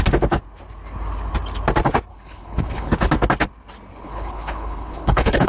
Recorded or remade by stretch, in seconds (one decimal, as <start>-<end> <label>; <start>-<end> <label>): 0.0-2.1 recorded; 2.1-2.9 remade; 2.9-3.9 recorded; 3.9-5.5 remade